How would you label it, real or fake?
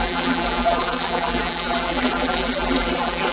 fake